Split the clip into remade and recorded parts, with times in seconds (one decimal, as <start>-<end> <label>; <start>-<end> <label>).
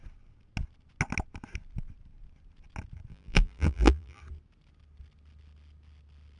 0.0-3.1 recorded; 3.1-4.2 remade; 4.2-6.4 recorded